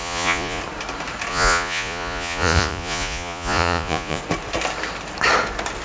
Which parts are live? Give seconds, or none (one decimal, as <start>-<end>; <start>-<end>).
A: 0.6-1.3; 4.2-5.8